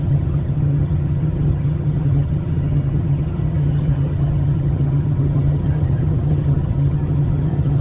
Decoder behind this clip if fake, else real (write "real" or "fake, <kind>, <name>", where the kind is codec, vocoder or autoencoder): fake, vocoder, HiFi-GAN